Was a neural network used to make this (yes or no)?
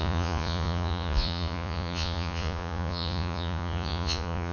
yes